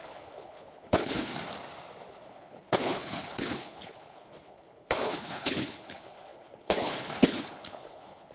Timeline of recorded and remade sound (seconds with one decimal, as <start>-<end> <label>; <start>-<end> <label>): 0.0-1.3 remade; 1.3-2.1 recorded; 2.1-8.3 remade